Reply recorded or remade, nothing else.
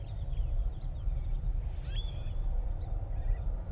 recorded